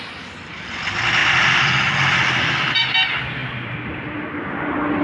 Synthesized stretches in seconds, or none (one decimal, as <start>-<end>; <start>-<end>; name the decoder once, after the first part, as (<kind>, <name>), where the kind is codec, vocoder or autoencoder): none